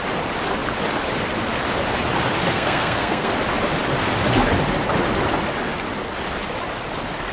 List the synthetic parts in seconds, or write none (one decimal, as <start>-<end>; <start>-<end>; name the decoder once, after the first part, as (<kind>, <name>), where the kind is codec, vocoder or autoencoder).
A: 2.5-3.3 (codec, SNAC)